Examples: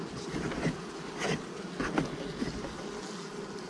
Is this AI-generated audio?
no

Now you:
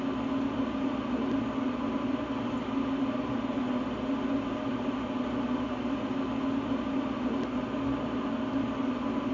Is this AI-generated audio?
no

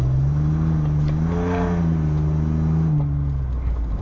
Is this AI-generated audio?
no